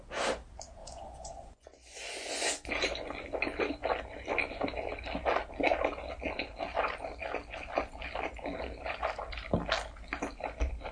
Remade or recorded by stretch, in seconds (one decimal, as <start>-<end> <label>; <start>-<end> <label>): 0.0-0.8 recorded; 0.8-2.7 remade; 2.7-10.9 recorded